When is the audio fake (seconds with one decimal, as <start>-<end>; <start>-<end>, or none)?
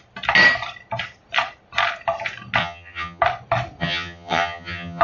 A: 2.6-3.2; 3.8-5.0